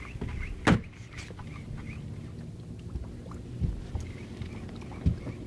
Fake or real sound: real